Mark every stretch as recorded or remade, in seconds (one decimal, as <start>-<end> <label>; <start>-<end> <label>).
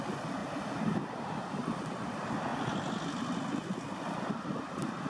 0.0-0.4 remade; 0.4-1.1 recorded; 1.1-5.1 remade